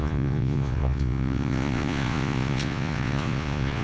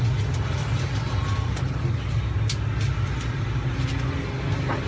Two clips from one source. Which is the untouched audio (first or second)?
second